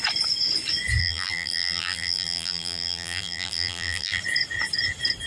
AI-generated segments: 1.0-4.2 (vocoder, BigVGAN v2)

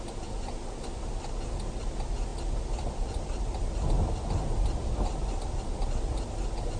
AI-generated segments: none

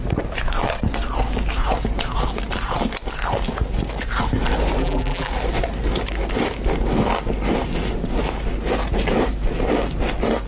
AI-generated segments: 4.8-5.3 (vocoder, BigVGAN v2)